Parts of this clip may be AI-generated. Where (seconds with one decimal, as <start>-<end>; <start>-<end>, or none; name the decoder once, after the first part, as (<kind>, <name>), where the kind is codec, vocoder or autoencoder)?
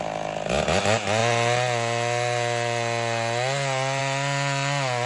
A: none